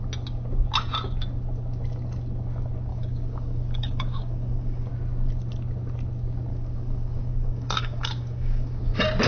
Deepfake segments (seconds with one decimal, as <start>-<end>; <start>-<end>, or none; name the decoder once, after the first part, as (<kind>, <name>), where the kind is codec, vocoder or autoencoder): 2.9-4.9 (codec, DAC); 6.5-8.8